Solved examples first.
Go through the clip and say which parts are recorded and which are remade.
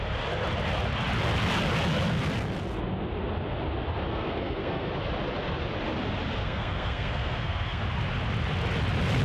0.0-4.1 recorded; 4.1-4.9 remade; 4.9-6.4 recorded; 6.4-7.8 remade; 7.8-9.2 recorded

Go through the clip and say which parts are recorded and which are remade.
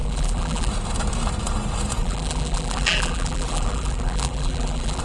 0.0-0.7 remade; 0.7-2.0 recorded; 2.0-5.0 remade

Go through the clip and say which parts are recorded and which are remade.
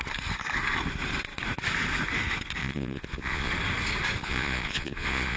0.0-2.6 recorded; 2.6-3.5 remade; 3.5-4.2 recorded; 4.2-5.4 remade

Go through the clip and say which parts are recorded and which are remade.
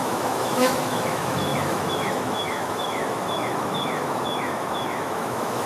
0.0-5.7 remade